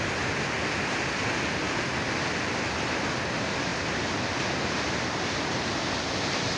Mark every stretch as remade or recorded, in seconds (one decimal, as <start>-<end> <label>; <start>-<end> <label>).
0.0-6.6 recorded